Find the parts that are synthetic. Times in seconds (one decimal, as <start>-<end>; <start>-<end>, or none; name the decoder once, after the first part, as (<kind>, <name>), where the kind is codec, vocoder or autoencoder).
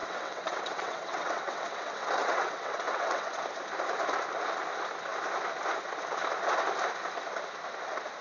0.0-3.4 (vocoder, WaveNeXt)